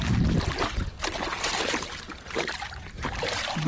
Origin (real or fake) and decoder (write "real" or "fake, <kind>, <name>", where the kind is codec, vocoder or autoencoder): real